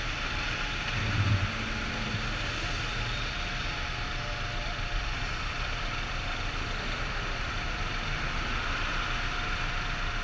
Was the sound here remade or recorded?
recorded